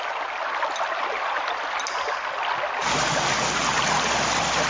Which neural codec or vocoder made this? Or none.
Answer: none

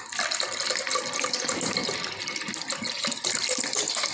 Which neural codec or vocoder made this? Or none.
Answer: none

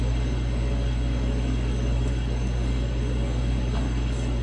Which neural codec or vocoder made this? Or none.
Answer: codec, DAC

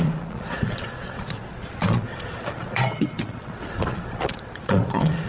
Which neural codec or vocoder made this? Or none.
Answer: vocoder, Vocos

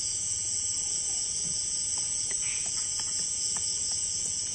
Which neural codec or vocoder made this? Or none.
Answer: vocoder, Vocos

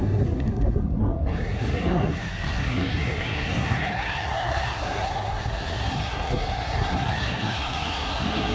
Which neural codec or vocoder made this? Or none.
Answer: codec, SNAC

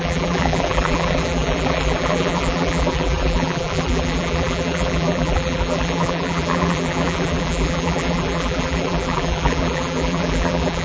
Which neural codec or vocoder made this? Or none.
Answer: vocoder, BigVGAN v2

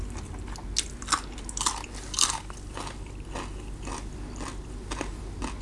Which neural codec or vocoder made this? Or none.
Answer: none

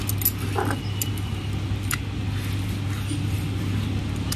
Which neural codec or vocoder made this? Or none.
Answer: none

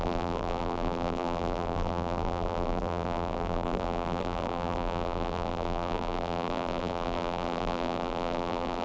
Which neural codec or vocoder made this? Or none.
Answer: vocoder, BigVGAN v2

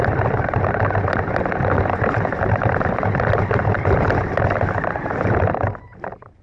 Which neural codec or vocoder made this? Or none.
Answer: none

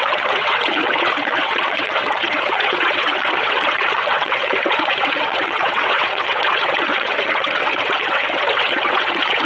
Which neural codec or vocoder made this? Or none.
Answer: vocoder, WaveNeXt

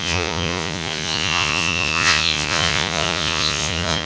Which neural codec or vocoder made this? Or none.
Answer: vocoder, Vocos